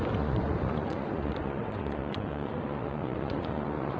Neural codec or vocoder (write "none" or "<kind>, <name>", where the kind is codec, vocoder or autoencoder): vocoder, Vocos